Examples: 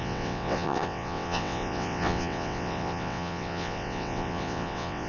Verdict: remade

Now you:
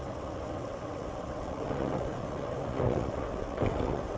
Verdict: remade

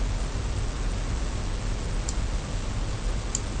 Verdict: recorded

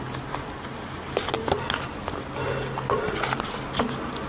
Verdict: recorded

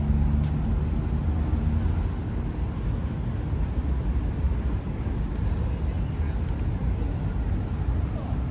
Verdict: recorded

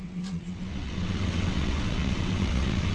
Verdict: remade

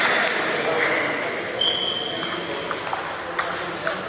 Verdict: recorded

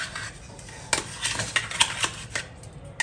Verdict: recorded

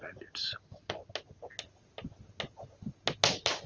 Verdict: recorded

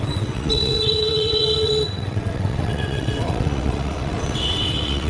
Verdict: remade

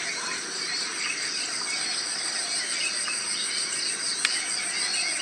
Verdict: recorded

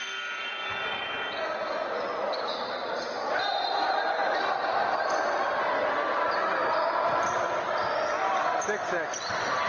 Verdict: recorded